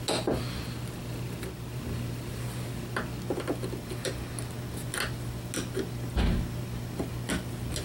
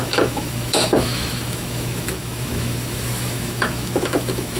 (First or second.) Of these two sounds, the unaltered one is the first